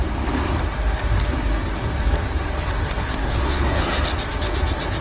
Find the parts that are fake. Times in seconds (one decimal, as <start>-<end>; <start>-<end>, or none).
3.0-3.8